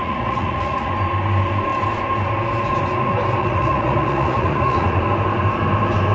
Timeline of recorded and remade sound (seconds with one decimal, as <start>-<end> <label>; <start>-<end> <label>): 0.0-0.9 remade; 0.9-3.4 recorded; 3.4-5.0 remade; 5.0-6.1 recorded